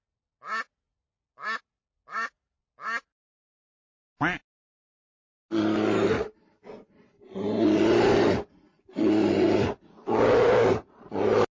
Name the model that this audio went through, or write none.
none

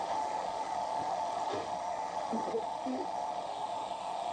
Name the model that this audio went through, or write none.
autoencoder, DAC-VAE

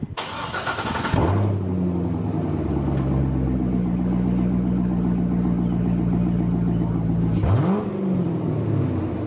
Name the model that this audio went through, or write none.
none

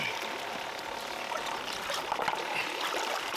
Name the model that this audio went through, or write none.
none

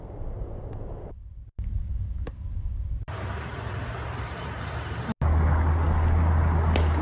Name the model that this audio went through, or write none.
none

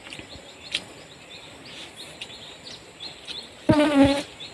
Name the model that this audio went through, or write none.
none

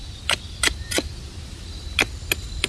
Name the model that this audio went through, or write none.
none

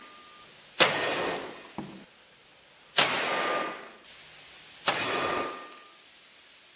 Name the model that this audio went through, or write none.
none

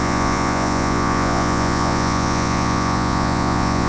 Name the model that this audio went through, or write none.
vocoder, Vocos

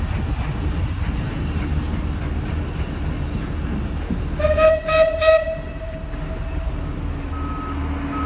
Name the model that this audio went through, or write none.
none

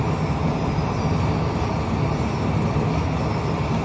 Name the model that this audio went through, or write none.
none